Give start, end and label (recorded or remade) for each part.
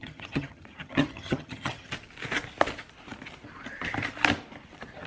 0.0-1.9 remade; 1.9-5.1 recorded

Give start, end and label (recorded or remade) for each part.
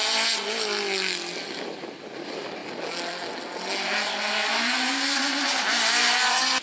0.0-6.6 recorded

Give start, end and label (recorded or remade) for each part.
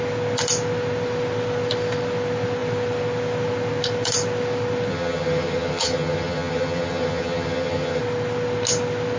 0.0-4.9 recorded; 4.9-8.0 remade; 8.0-9.2 recorded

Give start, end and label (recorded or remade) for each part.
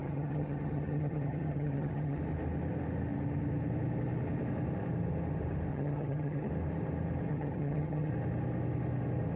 0.0-2.2 remade; 2.2-5.7 recorded; 5.7-6.5 remade; 6.5-7.3 recorded; 7.3-8.1 remade; 8.1-9.4 recorded